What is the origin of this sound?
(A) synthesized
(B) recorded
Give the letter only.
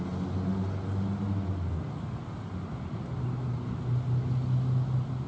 B